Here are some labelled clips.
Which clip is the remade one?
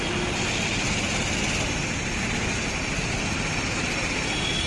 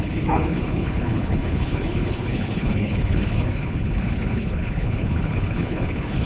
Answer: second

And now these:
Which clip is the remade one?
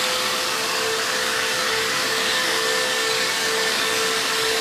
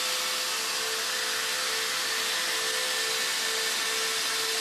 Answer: first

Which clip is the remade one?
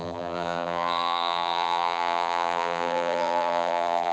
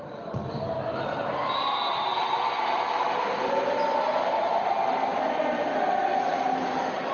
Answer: first